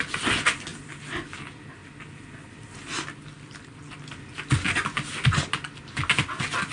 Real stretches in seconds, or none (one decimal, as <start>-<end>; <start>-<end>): 0.0-6.7